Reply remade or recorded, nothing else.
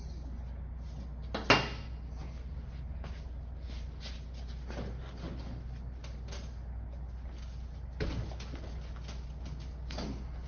recorded